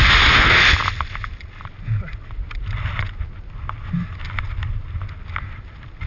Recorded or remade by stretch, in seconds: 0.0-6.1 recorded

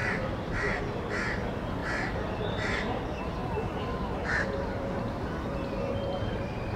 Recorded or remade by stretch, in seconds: 0.0-0.8 remade; 0.8-1.8 recorded; 1.8-2.3 remade; 2.3-3.4 recorded; 3.4-6.8 remade

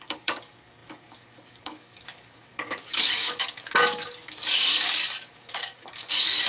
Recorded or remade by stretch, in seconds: 0.0-6.5 remade

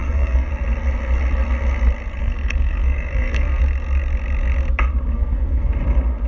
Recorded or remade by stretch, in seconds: 0.0-0.5 remade; 0.5-2.2 recorded; 2.2-3.6 remade; 3.6-5.1 recorded; 5.1-5.7 remade; 5.7-6.3 recorded